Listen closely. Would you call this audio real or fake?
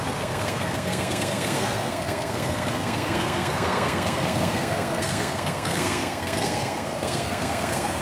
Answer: fake